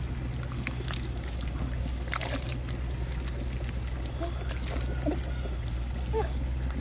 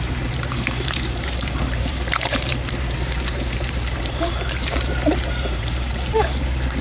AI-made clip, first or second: second